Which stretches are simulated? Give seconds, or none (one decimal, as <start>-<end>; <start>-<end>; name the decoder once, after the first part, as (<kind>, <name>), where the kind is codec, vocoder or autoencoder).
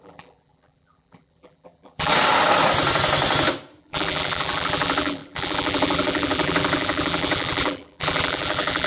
0.0-2.1 (vocoder, BigVGAN v2); 3.8-8.9